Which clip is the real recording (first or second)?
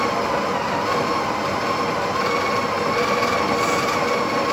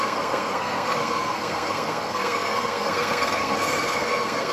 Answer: first